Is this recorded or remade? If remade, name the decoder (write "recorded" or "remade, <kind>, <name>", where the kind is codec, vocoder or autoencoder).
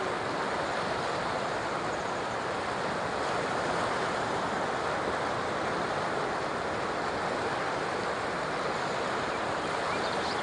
recorded